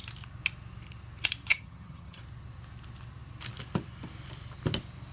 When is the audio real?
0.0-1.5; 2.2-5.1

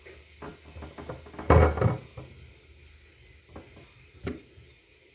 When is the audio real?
0.0-5.1

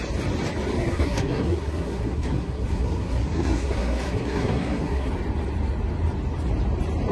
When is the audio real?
0.0-0.8; 5.1-7.1

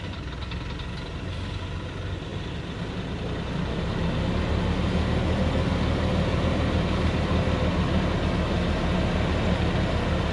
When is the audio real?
0.0-10.3

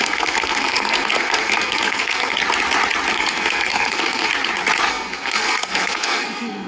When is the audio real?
2.4-3.1; 4.3-4.9

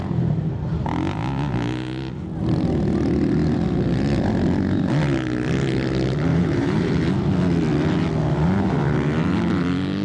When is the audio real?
0.0-6.3; 6.9-10.0